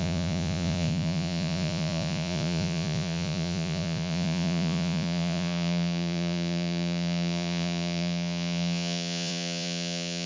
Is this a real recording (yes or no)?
no